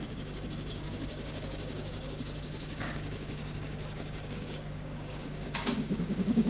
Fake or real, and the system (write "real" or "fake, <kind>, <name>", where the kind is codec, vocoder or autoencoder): fake, codec, DAC